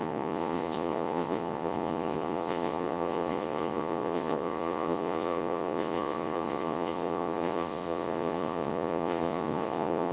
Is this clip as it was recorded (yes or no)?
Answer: no